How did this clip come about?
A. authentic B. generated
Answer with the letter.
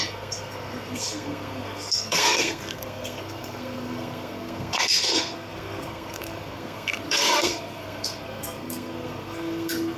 B